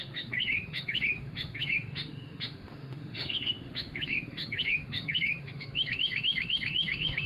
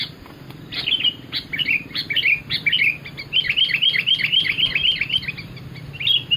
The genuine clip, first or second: second